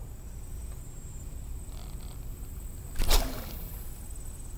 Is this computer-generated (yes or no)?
no